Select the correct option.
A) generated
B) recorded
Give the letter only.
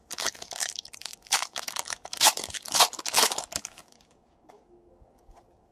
A